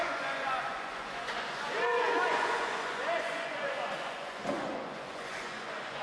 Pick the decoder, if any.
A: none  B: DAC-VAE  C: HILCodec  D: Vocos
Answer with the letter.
D